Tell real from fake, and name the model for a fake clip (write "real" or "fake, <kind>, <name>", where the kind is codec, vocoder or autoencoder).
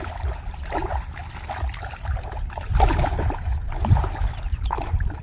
real